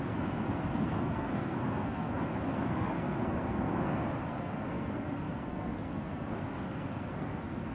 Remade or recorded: remade